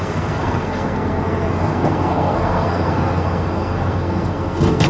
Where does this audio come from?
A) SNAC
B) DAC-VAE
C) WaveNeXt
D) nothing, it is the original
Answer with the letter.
A